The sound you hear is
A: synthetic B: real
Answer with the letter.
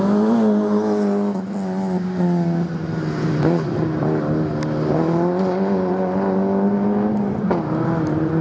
B